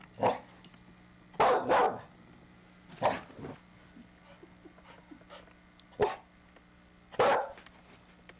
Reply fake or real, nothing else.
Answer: real